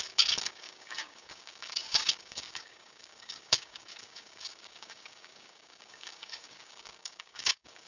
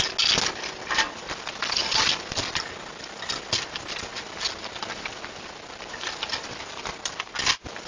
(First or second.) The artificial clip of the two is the first